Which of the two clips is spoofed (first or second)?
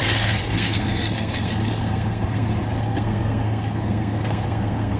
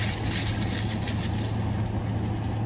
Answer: first